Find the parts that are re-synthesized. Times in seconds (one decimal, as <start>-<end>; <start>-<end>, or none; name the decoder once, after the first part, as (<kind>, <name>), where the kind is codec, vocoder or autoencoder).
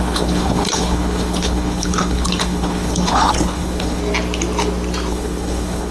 0.0-4.0 (codec, HILCodec); 5.1-5.9